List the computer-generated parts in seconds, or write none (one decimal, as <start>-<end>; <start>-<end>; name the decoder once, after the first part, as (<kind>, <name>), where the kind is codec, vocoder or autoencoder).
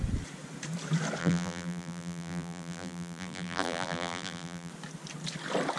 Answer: 1.2-4.7 (vocoder, BigVGAN v2)